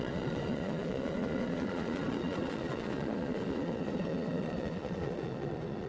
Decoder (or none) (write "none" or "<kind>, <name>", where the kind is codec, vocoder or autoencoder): vocoder, Vocos